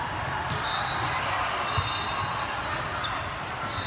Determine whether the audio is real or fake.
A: real